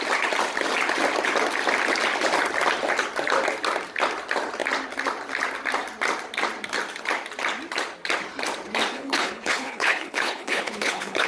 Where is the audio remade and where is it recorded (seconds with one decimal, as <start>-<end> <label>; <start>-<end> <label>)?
0.0-8.9 recorded; 8.9-11.3 remade